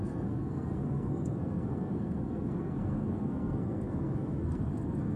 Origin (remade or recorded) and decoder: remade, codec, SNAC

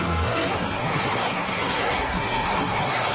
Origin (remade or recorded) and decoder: remade, codec, SNAC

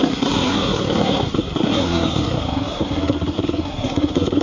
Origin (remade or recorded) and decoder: remade, codec, SNAC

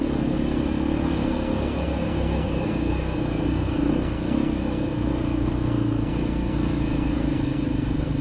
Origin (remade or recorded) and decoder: remade, codec, SNAC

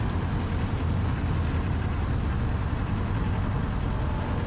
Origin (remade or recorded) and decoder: recorded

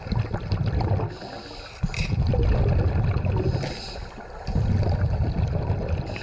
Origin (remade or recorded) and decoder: recorded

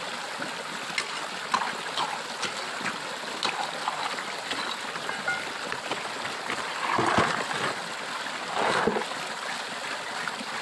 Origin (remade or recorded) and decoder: recorded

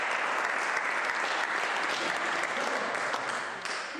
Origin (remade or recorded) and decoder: recorded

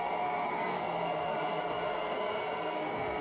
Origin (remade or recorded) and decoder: remade, codec, SNAC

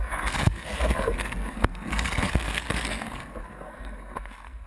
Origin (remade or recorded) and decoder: remade, codec, SNAC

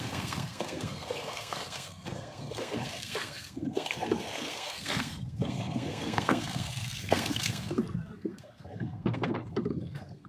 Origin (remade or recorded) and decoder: remade, codec, SNAC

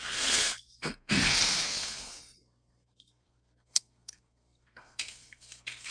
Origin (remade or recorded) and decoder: remade, codec, SNAC